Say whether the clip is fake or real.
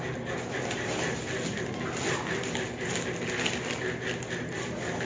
real